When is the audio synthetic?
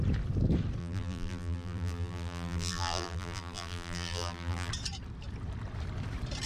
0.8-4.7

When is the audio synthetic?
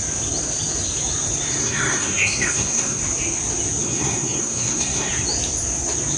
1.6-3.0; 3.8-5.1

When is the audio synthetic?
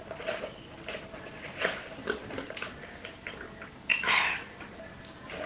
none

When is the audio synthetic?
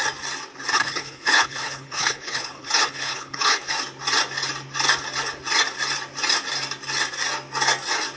0.7-3.7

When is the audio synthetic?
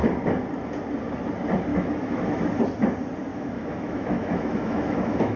1.7-2.4; 3.3-5.4